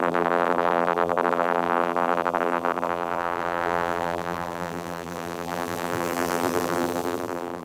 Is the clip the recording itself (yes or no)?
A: no